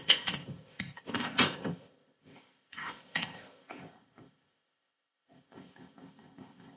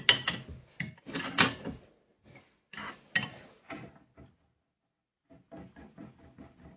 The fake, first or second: first